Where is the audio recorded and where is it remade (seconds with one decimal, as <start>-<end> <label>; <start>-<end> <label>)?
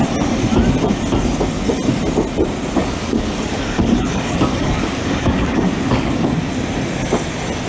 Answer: 0.0-2.8 recorded; 2.8-6.3 remade; 6.3-7.7 recorded